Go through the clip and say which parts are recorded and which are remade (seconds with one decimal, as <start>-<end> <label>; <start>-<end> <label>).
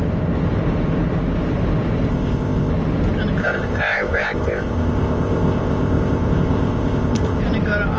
0.0-2.1 recorded; 2.1-2.7 remade; 2.7-3.4 recorded; 3.4-7.4 remade; 7.4-8.0 recorded